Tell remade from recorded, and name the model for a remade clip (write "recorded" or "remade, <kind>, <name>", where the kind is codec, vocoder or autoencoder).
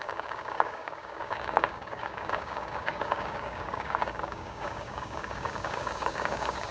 remade, codec, DAC